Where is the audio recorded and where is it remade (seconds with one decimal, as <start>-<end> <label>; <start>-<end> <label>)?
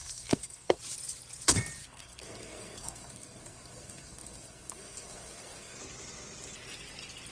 0.0-0.8 remade; 0.8-1.8 recorded; 1.8-5.8 remade; 5.8-7.3 recorded